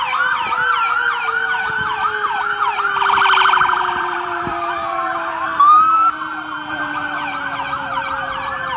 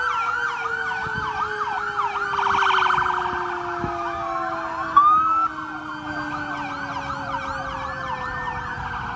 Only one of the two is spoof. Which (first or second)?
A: first